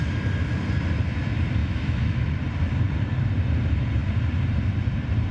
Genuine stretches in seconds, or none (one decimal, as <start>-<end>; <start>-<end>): 0.0-1.6; 2.4-5.3